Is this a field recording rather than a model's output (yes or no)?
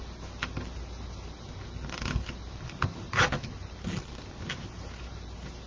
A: yes